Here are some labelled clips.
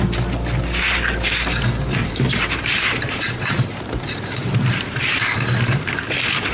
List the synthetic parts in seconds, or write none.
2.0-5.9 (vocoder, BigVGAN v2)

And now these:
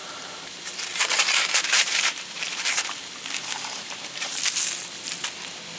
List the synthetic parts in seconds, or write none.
0.0-0.5 (vocoder, BigVGAN v2); 0.9-4.4

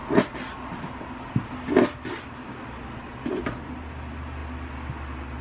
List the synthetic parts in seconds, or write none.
none

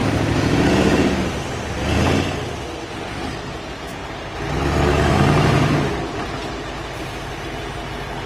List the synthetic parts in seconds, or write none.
0.0-1.4 (vocoder, BigVGAN v2)

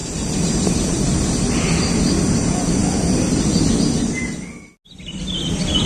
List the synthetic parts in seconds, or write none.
0.0-2.1 (vocoder, BigVGAN v2)